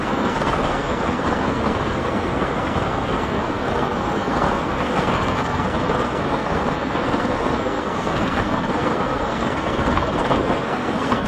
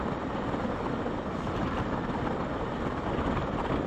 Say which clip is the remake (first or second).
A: first